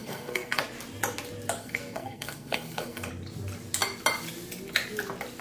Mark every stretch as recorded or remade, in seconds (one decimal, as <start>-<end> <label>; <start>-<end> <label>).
0.0-0.6 remade; 0.6-1.6 recorded; 1.6-3.1 remade; 3.1-5.4 recorded